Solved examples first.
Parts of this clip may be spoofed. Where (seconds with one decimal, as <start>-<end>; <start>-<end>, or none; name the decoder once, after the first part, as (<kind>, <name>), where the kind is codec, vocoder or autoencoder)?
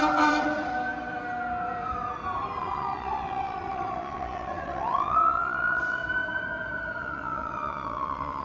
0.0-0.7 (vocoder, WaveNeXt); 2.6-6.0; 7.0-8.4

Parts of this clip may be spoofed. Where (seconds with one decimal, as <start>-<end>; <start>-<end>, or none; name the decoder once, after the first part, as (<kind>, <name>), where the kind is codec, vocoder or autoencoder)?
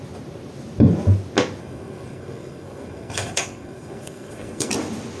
1.6-4.7 (codec, SNAC)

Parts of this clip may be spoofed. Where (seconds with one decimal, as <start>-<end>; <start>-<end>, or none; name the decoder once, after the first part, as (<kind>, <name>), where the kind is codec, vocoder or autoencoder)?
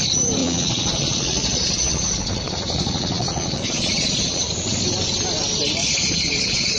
0.4-4.5 (vocoder, Vocos); 5.8-6.8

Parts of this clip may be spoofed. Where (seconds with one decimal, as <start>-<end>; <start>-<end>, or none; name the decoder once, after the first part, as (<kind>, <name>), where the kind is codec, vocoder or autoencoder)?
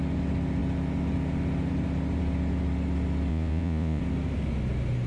3.3-4.0 (vocoder, Vocos)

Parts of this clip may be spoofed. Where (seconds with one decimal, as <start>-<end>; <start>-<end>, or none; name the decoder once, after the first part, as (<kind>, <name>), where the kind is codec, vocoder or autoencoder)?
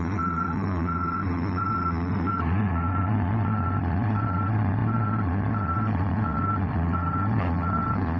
0.0-8.2 (vocoder, Vocos)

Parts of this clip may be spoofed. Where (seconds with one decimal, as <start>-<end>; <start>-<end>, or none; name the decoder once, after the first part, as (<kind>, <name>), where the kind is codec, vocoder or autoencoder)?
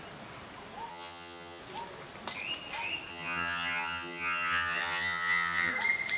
0.9-1.6 (vocoder, HiFi-GAN); 3.1-5.7